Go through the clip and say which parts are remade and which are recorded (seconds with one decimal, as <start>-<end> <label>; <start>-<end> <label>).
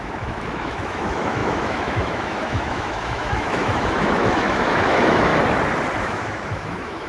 0.0-5.3 remade; 5.3-6.0 recorded; 6.0-7.1 remade